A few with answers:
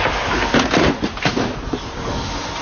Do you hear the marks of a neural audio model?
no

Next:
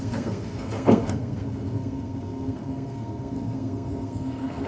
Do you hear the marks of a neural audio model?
yes